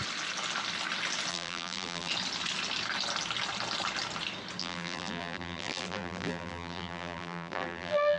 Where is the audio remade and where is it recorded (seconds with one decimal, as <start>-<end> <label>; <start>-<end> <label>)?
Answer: 0.0-1.3 recorded; 1.3-2.1 remade; 2.1-4.6 recorded; 4.6-8.2 remade